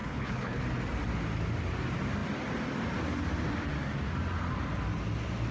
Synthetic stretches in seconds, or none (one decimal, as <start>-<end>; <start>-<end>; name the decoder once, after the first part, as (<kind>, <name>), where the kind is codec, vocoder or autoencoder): 0.0-0.6 (codec, HILCodec)